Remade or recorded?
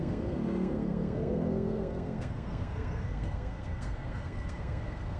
remade